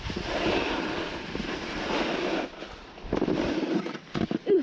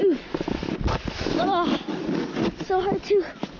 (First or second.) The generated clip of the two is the first